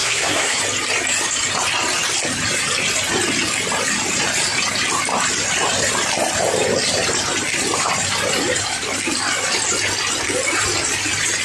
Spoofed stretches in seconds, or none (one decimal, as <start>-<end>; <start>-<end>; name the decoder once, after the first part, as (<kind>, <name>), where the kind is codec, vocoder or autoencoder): 0.0-0.6 (codec, SNAC)